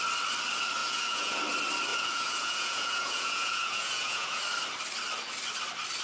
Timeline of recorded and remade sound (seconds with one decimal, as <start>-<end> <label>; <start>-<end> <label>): 0.0-0.8 recorded; 0.8-1.4 remade; 1.4-1.9 recorded; 1.9-4.4 remade; 4.4-6.0 recorded